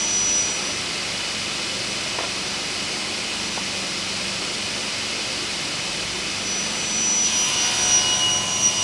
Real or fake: real